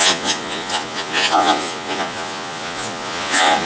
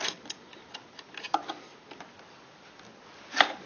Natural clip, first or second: second